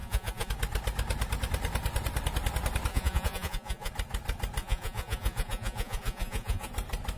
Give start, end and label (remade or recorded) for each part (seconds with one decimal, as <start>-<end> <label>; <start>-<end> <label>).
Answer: 0.0-0.5 remade; 0.5-2.9 recorded; 2.9-3.9 remade; 3.9-4.6 recorded; 4.6-6.7 remade; 6.7-7.2 recorded